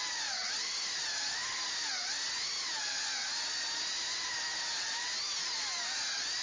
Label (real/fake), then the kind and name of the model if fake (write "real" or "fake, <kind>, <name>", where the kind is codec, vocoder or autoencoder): real